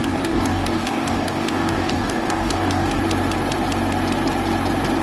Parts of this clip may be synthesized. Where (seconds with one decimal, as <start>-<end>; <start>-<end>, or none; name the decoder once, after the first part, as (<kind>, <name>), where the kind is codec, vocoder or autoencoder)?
0.0-3.0 (codec, DAC)